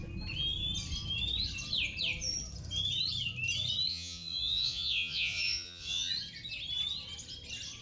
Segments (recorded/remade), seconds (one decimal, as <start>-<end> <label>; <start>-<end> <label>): 0.0-3.9 recorded; 3.9-6.1 remade; 6.1-7.8 recorded